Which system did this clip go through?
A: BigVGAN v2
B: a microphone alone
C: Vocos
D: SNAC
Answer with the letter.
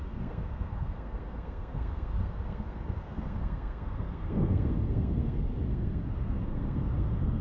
D